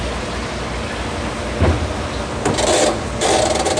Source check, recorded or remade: recorded